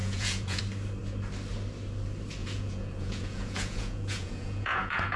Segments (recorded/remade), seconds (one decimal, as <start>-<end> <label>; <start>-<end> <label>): 0.0-0.6 remade; 0.6-2.4 recorded; 2.4-5.2 remade